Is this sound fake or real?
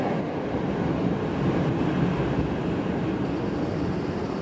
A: real